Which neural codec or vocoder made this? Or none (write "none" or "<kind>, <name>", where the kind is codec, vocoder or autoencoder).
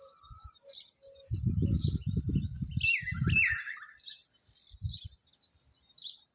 none